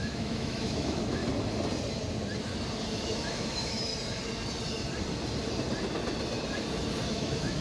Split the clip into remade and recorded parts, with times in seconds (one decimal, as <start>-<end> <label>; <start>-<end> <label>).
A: 0.0-1.2 remade; 1.2-3.0 recorded; 3.0-3.9 remade; 3.9-7.1 recorded; 7.1-7.6 remade